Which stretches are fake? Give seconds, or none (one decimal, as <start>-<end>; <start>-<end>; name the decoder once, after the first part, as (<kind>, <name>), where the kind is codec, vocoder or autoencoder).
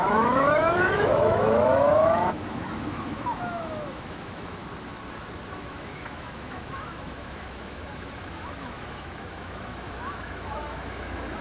0.0-4.6 (autoencoder, DAC-VAE); 5.5-11.4